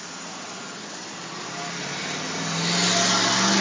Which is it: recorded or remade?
recorded